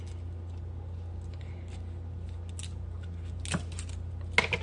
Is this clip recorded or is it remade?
recorded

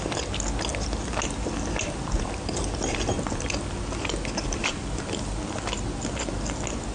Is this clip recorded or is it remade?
recorded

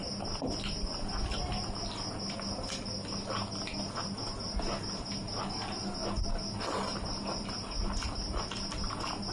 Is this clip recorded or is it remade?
recorded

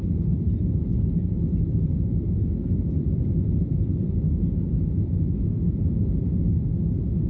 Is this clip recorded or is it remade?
recorded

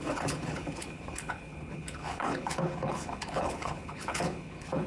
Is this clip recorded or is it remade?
remade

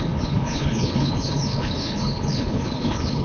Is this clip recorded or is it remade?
remade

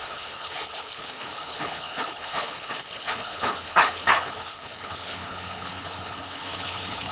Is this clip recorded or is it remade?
remade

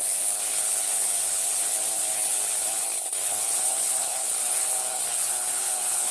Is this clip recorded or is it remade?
remade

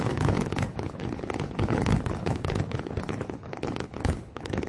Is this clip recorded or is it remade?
remade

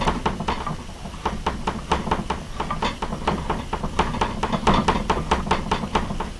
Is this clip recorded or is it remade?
recorded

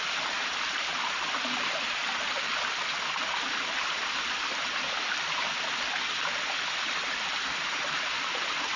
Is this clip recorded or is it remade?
recorded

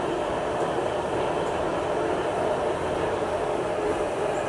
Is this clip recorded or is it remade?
recorded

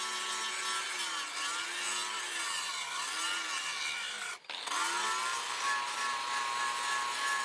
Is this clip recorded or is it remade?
recorded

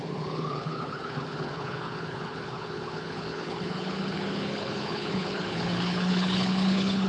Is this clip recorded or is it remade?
remade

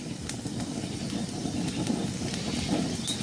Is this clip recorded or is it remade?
recorded